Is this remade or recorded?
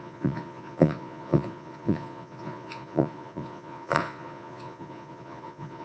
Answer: remade